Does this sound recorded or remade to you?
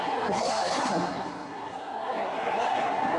remade